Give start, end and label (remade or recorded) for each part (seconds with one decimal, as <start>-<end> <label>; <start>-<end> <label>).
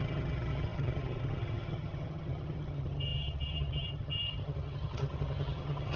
0.0-6.0 remade